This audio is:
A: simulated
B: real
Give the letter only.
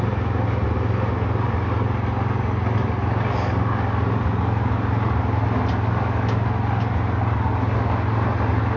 B